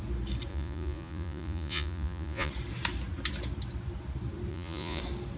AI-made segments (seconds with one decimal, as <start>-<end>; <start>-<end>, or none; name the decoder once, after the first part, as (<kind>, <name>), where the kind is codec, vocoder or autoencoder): 0.5-2.5 (vocoder, Vocos); 4.5-5.0